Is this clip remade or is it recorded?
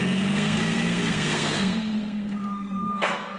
remade